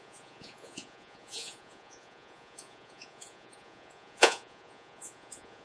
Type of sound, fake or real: fake